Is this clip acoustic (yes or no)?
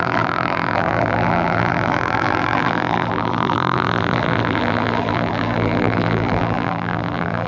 no